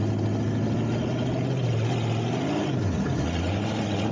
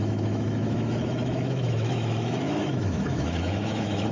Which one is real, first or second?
first